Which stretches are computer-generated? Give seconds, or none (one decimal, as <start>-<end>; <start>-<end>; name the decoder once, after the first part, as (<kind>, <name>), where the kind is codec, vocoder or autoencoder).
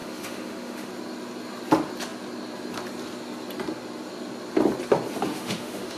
0.0-0.9 (autoencoder, DAC-VAE); 5.3-6.0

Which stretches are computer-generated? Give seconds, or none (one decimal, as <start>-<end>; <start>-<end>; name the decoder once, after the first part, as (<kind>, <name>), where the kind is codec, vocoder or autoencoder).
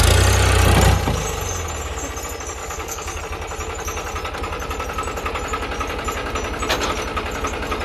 2.6-3.2 (codec, DAC)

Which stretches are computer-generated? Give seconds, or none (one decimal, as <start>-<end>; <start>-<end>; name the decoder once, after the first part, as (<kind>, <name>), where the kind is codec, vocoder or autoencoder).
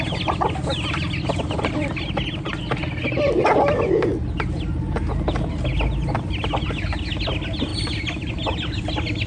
none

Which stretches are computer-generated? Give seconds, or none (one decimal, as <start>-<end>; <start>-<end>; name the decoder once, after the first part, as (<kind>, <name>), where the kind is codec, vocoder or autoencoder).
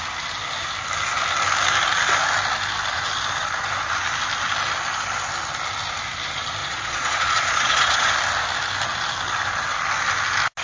6.6-8.1 (vocoder, Vocos)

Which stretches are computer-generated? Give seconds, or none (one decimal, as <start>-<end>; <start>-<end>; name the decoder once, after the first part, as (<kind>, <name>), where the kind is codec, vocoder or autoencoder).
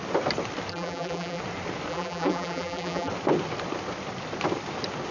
0.7-1.4 (vocoder, BigVGAN v2); 1.9-3.1